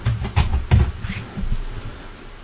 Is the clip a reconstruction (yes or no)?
no